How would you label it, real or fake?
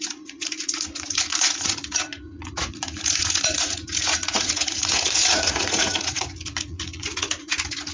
fake